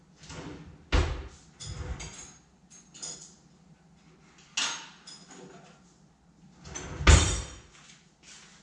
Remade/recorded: recorded